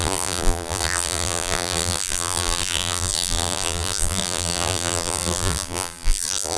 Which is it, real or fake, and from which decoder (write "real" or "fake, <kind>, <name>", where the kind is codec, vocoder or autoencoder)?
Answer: fake, vocoder, BigVGAN v2